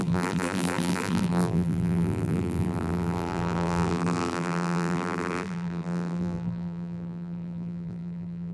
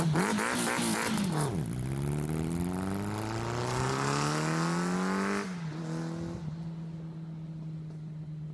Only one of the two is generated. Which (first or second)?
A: first